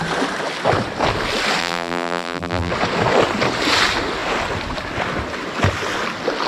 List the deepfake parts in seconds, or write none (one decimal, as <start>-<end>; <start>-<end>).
1.6-2.7